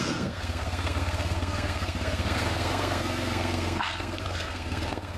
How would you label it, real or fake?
fake